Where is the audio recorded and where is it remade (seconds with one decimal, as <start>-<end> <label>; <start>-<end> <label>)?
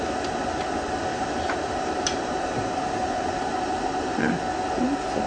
0.0-1.1 recorded; 1.1-4.3 remade; 4.3-5.3 recorded